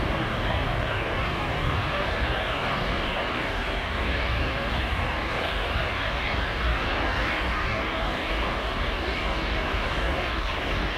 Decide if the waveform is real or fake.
fake